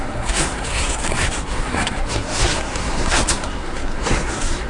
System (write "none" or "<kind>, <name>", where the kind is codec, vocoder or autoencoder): codec, SNAC